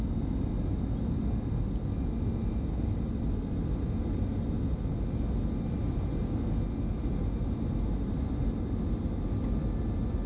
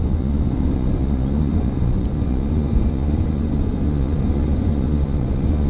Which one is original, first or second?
first